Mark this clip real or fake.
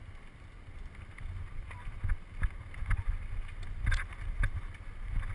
real